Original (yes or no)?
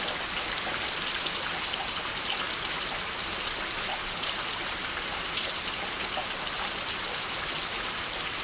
yes